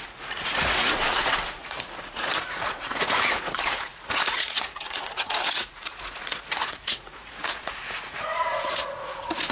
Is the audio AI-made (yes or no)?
yes